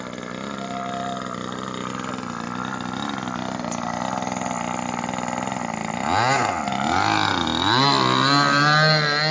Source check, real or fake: real